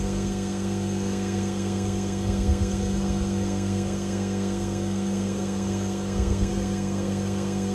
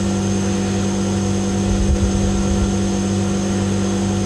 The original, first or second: second